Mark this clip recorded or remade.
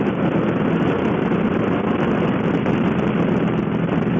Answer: recorded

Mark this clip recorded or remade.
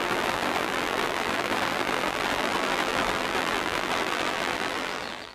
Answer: remade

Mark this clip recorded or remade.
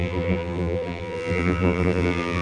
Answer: remade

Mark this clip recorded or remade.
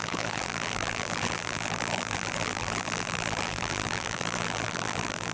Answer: remade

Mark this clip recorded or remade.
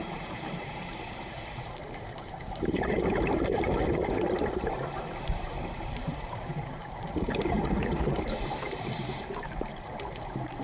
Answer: remade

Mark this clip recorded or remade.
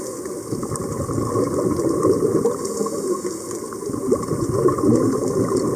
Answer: recorded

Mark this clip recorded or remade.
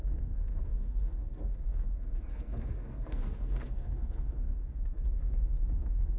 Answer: remade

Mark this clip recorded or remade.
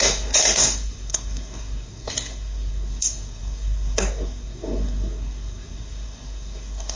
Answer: remade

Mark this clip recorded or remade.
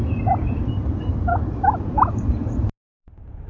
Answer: recorded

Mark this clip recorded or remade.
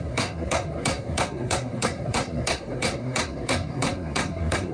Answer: remade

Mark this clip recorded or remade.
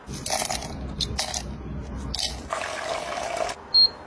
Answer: recorded